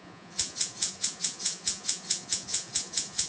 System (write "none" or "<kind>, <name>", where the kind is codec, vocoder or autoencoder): vocoder, Vocos